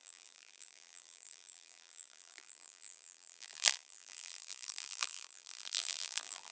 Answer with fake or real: fake